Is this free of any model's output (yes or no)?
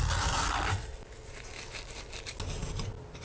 yes